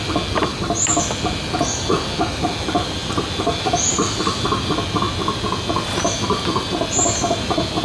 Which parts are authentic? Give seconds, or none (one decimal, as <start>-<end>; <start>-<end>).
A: 0.0-7.8